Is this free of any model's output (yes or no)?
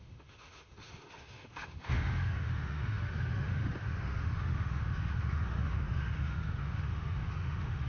no